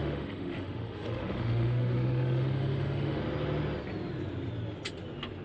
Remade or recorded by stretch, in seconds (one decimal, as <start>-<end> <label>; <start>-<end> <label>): 0.0-3.2 remade; 3.2-5.4 recorded